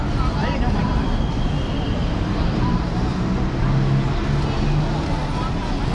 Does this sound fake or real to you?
real